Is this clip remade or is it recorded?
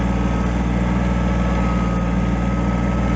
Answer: recorded